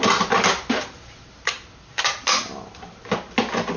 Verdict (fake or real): real